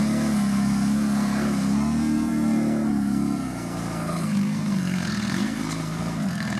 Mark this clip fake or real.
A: fake